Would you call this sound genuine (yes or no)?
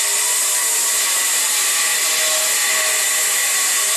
yes